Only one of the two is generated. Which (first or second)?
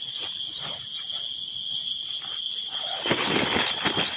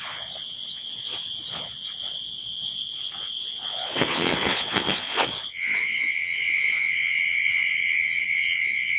second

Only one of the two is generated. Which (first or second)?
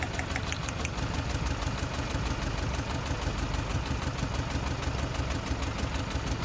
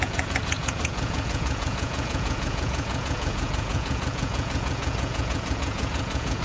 second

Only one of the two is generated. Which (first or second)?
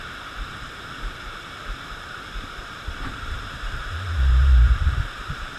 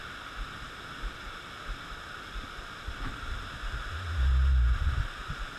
first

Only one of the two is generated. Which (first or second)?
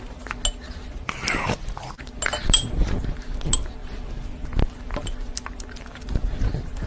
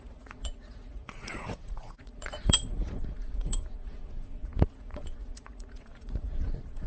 second